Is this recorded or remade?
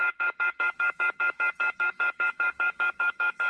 remade